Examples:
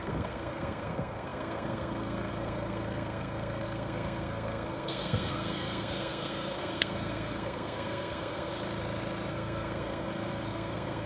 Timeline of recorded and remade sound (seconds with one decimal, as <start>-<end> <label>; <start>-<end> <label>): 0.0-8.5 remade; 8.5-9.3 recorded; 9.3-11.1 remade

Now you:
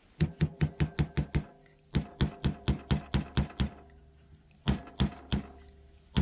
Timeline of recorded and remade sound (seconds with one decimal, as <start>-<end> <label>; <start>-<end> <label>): 0.0-6.2 recorded

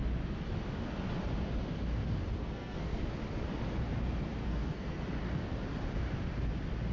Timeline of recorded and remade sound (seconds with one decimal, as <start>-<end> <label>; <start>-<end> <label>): 0.0-2.4 recorded; 2.4-3.0 remade; 3.0-4.4 recorded; 4.4-5.0 remade; 5.0-6.9 recorded

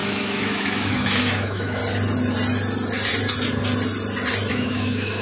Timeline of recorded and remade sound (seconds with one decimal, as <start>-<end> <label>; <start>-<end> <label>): 0.0-1.8 remade; 1.8-4.5 recorded; 4.5-5.2 remade